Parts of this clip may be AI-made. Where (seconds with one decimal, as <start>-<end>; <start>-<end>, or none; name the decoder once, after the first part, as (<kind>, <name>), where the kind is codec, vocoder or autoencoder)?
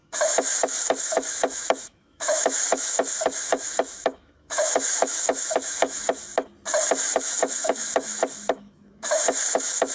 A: 0.0-6.3 (autoencoder, DAC-VAE); 7.1-9.9